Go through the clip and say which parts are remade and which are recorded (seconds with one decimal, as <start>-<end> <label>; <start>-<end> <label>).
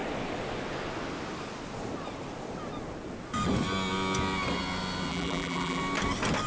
0.0-5.1 recorded; 5.1-5.8 remade; 5.8-6.5 recorded